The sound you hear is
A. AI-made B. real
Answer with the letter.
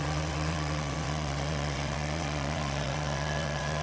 A